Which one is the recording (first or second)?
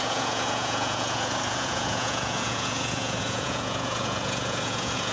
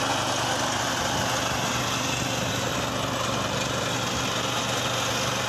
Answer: second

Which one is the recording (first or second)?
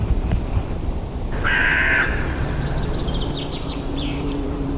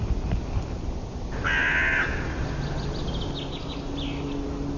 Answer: second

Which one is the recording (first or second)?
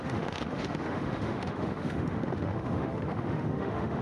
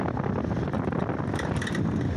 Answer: second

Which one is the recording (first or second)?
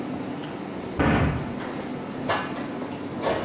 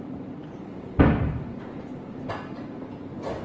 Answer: first